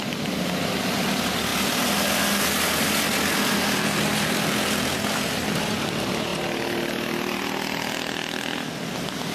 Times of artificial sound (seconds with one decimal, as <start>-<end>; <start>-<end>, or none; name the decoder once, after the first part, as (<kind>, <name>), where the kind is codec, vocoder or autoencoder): none